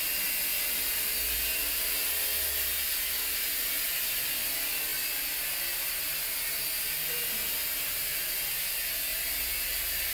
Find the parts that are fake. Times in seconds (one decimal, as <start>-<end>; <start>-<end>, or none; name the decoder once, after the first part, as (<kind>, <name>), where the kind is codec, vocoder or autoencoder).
none